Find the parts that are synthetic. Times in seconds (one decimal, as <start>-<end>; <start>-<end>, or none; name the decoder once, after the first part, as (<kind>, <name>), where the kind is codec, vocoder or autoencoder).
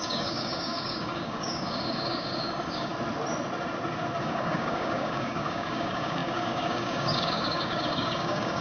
0.0-2.9 (codec, DAC); 4.2-8.6